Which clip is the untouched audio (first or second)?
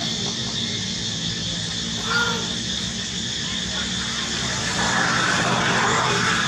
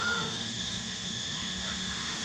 first